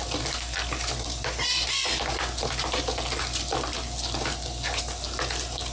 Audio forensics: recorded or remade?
recorded